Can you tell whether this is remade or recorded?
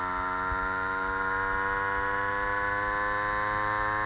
recorded